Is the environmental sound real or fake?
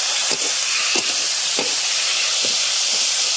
fake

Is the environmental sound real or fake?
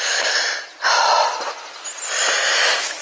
real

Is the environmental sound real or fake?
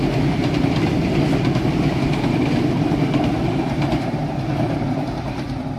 real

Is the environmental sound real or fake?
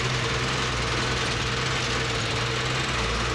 real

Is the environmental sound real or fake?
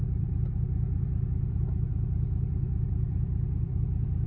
fake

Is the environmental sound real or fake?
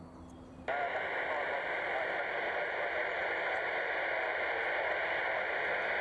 real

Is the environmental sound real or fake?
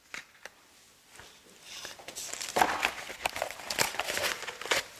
real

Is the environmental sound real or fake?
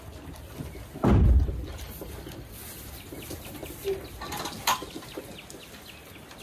real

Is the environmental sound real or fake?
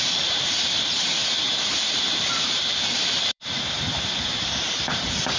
fake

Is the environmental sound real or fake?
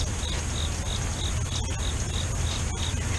real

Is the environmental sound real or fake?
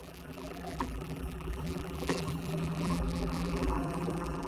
fake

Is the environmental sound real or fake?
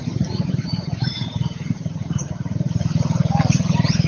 fake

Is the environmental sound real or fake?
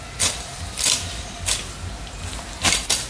real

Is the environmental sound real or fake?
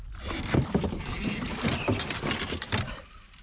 fake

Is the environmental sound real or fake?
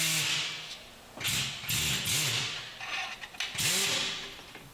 real